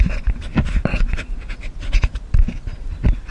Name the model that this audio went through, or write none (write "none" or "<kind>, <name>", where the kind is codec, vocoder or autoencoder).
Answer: none